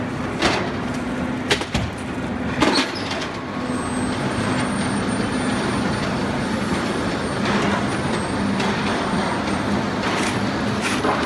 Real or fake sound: real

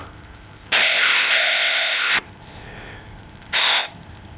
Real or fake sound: fake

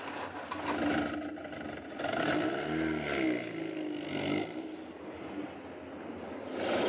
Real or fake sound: real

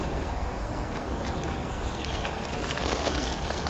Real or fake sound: fake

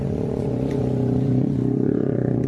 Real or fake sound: fake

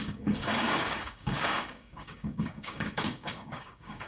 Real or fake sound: fake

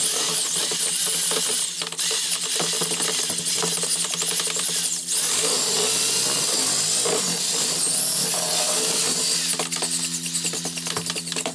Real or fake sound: real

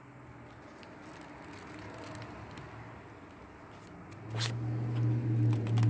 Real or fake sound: real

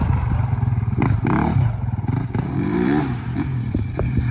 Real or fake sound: fake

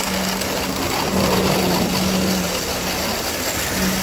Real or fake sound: real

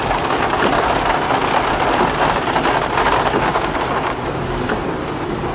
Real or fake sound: real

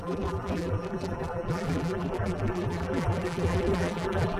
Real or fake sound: fake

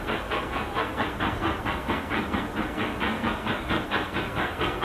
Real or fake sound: fake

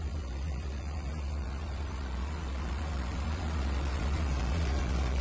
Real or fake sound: fake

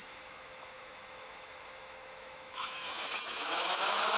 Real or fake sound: fake